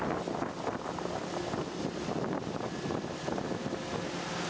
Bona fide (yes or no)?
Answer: yes